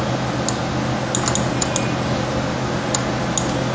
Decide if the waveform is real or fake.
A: real